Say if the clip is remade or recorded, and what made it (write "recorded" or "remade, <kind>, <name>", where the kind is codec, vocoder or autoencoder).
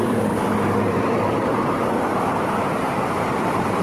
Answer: remade, vocoder, BigVGAN v2